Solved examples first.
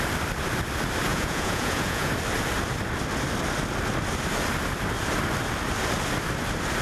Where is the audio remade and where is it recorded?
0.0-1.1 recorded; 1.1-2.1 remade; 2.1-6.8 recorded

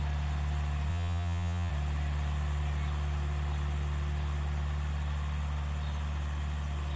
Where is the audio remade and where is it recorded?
0.0-0.9 recorded; 0.9-1.7 remade; 1.7-7.0 recorded

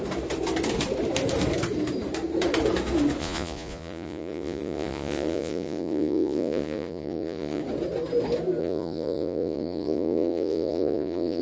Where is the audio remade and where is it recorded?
0.0-3.2 recorded; 3.2-7.6 remade; 7.6-8.6 recorded; 8.6-11.4 remade

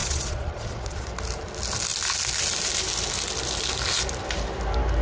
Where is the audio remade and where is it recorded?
0.0-1.1 remade; 1.1-5.0 recorded